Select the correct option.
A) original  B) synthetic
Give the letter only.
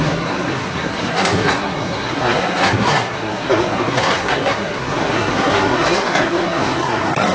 B